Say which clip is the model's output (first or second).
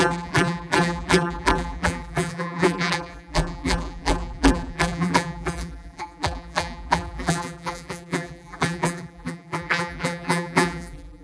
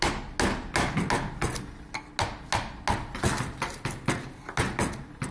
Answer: first